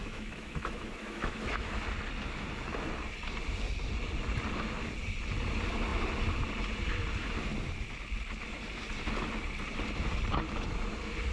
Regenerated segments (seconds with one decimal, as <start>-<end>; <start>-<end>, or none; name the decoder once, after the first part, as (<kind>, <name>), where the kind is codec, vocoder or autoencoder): 0.0-1.7 (autoencoder, DAC-VAE)